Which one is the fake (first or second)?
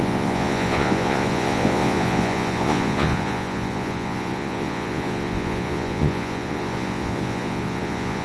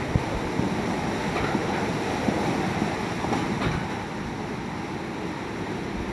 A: first